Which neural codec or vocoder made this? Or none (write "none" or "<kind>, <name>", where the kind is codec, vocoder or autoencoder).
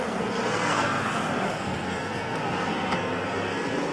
codec, SNAC